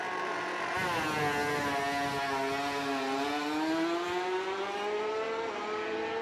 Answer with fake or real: real